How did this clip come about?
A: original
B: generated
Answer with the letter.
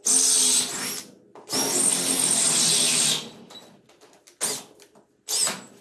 A